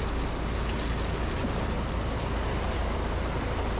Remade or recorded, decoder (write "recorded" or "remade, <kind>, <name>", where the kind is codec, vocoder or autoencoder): recorded